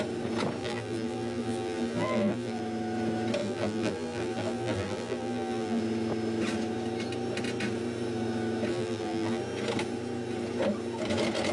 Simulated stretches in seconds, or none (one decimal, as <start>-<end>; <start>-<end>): 0.6-2.6; 3.4-5.8; 8.7-9.4